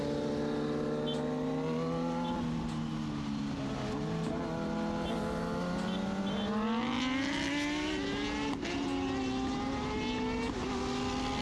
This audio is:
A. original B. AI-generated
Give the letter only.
A